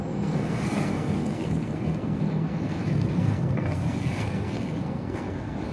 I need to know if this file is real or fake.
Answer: fake